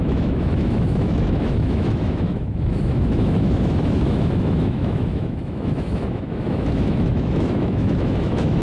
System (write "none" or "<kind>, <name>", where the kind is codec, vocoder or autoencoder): autoencoder, DAC-VAE